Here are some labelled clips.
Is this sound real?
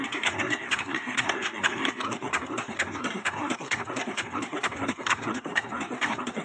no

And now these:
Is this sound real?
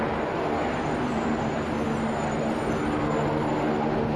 yes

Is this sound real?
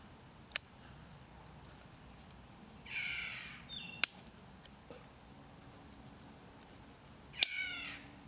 yes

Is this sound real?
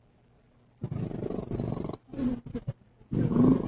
yes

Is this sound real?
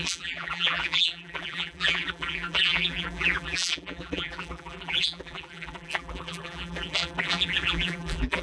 no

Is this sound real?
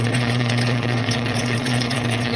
no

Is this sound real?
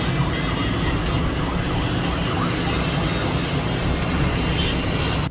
yes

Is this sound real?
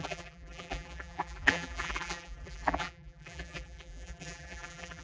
no